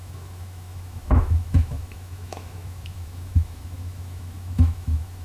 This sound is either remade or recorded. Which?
remade